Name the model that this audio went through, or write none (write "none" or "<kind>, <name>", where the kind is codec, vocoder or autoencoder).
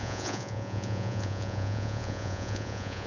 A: vocoder, Vocos